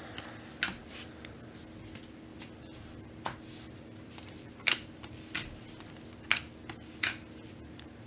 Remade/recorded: recorded